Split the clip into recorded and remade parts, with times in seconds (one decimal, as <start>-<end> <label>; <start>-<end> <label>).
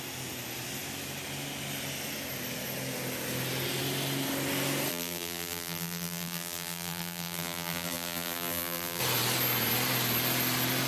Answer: 0.0-4.9 recorded; 4.9-9.0 remade; 9.0-10.9 recorded